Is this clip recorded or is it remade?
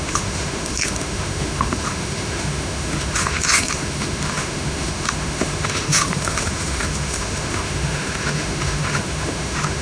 remade